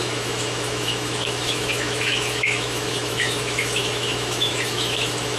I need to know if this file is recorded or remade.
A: remade